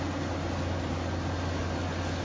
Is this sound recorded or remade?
recorded